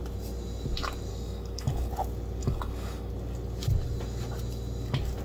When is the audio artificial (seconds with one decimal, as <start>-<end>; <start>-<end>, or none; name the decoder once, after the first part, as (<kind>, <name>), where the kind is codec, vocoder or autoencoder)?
1.1-1.9 (codec, DAC); 2.4-3.1

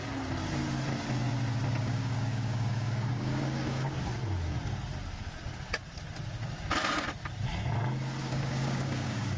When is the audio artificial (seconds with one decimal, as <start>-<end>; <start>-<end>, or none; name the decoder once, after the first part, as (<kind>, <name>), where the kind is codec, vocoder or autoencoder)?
1.8-4.1 (codec, DAC); 8.2-9.4

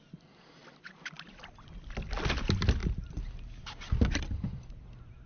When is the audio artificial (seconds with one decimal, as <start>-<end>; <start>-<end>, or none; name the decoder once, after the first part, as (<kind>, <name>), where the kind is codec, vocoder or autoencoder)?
none

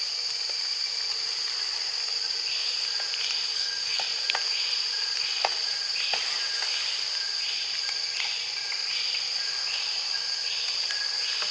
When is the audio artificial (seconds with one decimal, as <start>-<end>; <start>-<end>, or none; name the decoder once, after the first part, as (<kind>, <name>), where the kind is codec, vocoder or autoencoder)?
3.5-4.0 (codec, DAC)